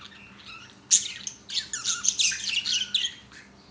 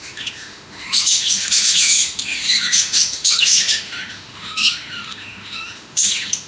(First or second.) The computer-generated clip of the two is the second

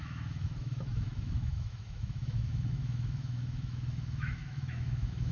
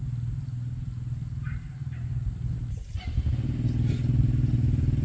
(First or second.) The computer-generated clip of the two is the first